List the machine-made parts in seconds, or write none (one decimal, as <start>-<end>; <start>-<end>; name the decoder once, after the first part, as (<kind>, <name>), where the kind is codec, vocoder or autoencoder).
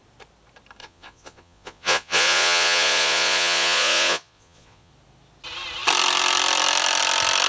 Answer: 0.8-4.9 (vocoder, Vocos)